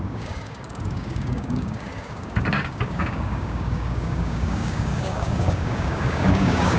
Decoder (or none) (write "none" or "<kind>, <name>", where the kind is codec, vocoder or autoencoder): codec, DAC